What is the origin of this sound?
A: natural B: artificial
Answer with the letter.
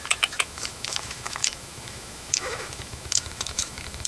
B